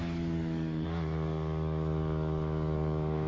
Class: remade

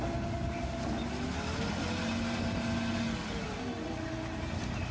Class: recorded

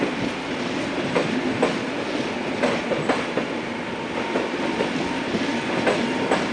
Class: recorded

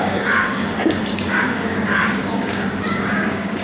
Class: remade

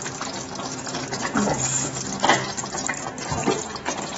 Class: recorded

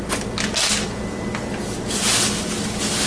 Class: recorded